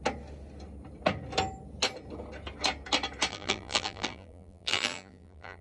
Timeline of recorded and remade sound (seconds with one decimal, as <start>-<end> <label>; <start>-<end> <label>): 0.0-3.3 recorded; 3.3-5.6 remade